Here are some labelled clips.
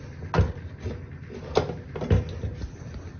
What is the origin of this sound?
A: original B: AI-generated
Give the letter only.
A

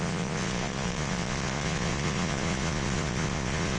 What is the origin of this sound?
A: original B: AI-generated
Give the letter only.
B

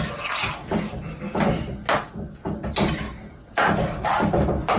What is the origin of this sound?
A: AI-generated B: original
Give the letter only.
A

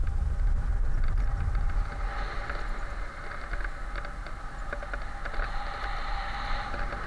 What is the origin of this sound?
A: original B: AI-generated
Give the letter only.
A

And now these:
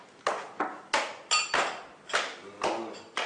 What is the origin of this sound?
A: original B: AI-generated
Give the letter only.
A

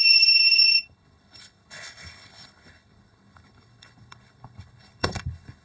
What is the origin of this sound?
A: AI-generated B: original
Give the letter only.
A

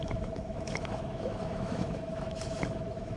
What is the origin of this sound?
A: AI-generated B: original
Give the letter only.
A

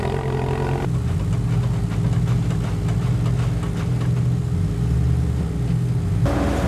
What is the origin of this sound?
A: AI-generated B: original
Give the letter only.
B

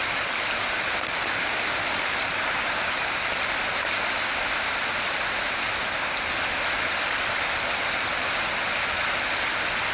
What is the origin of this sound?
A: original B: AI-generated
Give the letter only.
A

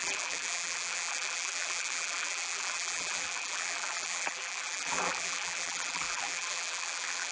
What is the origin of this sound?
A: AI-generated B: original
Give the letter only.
A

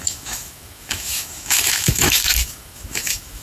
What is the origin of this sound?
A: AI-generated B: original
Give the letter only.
A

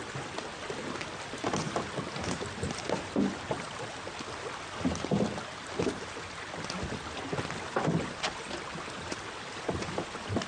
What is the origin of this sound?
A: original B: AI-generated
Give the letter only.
B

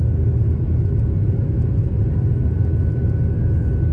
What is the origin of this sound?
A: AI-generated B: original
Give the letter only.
B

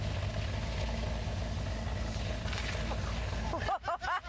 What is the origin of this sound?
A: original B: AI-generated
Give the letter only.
A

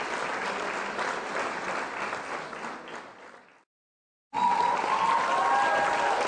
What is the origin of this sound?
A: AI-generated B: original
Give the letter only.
B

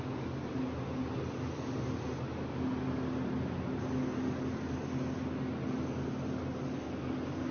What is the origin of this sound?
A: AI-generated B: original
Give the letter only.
B